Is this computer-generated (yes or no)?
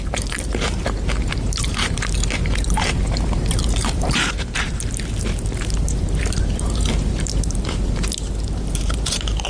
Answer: yes